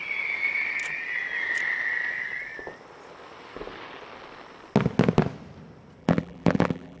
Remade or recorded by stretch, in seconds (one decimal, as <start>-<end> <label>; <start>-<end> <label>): 0.0-6.0 recorded; 6.0-7.0 remade